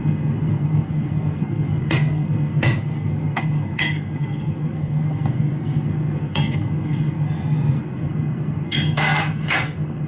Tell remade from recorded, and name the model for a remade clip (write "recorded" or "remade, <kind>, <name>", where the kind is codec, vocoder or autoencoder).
remade, codec, SNAC